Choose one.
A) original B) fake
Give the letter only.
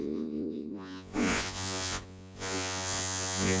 B